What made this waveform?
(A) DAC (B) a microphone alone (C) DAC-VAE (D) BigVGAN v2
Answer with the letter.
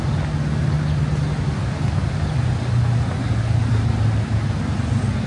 B